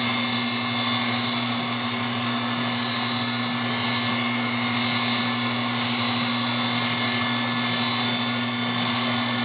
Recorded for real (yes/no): yes